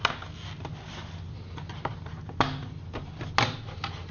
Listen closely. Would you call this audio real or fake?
real